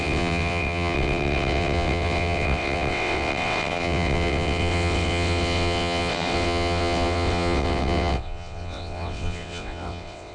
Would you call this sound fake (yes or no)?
yes